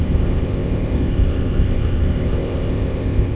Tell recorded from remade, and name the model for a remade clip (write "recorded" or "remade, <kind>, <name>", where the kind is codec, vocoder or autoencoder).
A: remade, codec, ZipCodec